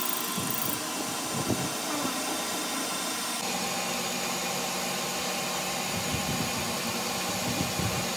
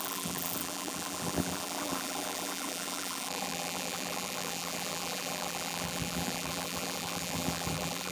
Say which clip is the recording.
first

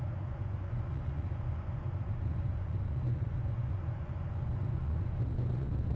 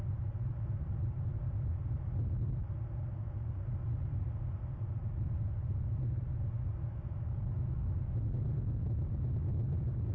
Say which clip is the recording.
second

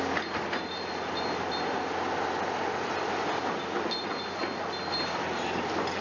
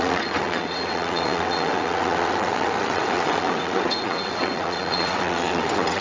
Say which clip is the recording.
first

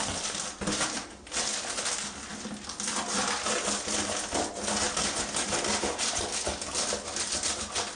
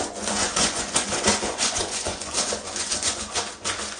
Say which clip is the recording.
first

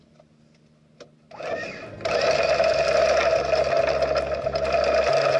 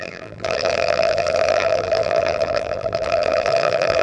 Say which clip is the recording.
first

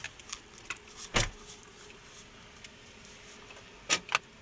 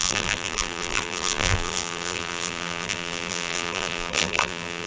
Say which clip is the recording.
first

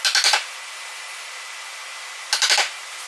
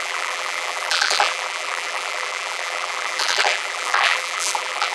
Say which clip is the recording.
first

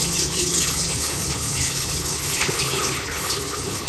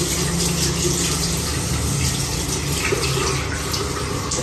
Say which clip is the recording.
second